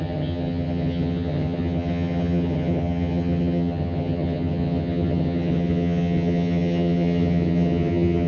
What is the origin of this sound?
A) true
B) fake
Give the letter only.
B